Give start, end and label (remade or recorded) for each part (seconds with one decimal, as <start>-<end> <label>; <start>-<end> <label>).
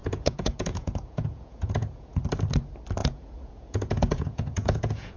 0.0-2.2 remade; 2.2-3.0 recorded; 3.0-5.2 remade